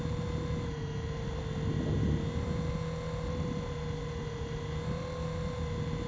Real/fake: real